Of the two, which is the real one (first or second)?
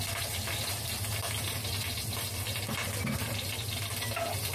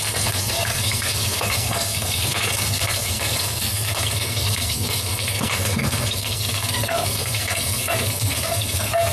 first